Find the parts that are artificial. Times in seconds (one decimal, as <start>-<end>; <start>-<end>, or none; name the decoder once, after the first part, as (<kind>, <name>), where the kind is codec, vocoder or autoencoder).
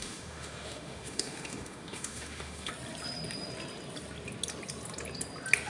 0.0-2.7 (autoencoder, DAC-VAE)